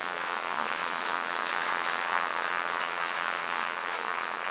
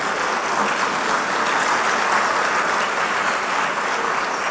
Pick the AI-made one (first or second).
first